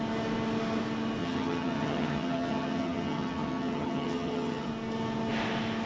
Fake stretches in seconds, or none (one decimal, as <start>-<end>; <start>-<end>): 1.2-4.7